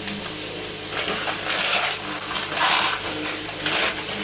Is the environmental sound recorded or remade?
recorded